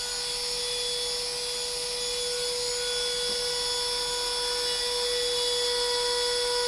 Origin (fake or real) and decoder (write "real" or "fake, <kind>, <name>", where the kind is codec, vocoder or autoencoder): real